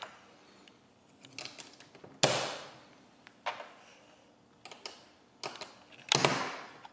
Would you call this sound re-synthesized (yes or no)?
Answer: no